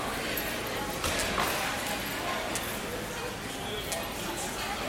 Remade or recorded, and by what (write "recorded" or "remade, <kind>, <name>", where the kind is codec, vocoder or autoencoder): recorded